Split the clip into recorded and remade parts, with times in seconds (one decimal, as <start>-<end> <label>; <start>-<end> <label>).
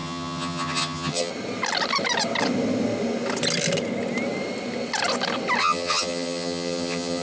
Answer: 0.0-1.3 remade; 1.3-5.6 recorded; 5.6-7.2 remade